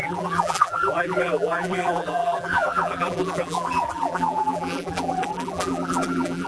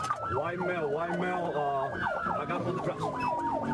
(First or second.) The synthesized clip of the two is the first